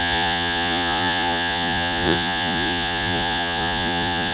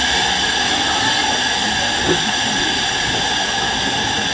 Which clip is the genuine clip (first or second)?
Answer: second